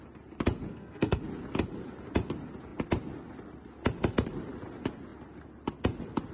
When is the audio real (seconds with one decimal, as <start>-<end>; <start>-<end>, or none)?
0.0-0.7; 1.2-6.3